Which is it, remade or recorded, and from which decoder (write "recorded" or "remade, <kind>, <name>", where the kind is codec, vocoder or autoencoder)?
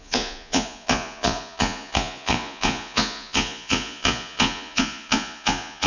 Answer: remade, vocoder, Vocos